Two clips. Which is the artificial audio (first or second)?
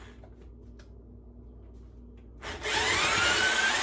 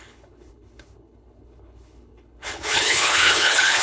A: second